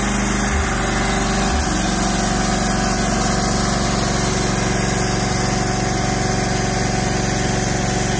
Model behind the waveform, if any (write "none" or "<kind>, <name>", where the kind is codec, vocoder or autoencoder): none